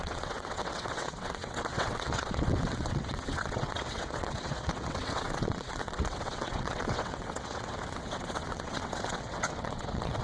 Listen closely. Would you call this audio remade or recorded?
remade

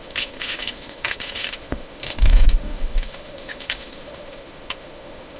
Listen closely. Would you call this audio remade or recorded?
remade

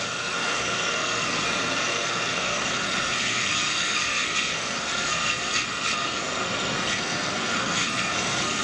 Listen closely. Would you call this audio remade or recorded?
remade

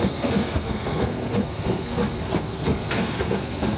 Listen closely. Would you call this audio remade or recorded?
remade